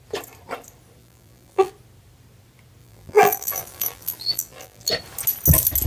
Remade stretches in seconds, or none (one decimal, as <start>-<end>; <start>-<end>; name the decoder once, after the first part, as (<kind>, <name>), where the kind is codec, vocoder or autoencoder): 1.0-1.7 (vocoder, BigVGAN v2); 2.8-4.9